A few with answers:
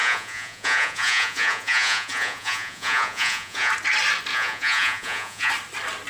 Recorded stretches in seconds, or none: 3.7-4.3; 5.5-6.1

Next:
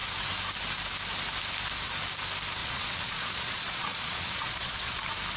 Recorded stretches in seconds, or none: 0.0-2.6; 5.0-5.4

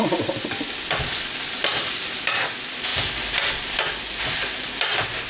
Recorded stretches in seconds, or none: 0.0-5.3

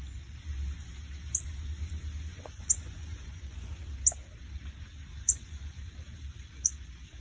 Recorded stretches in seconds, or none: 0.0-2.3; 3.7-5.2; 5.9-7.2

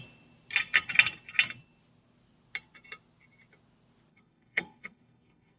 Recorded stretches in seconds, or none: 0.0-4.1

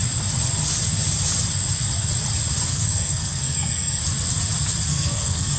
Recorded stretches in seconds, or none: 0.0-2.7; 4.0-4.9